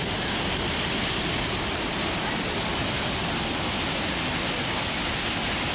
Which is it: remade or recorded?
recorded